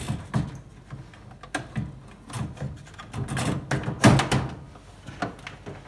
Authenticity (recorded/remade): recorded